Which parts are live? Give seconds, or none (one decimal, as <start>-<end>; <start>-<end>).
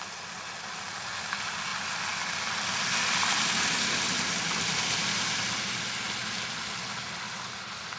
0.0-8.0